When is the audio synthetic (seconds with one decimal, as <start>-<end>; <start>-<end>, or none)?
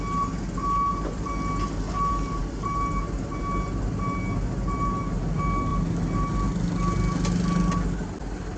none